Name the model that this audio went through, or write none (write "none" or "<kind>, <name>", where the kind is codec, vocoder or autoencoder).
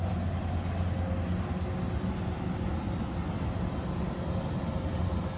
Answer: none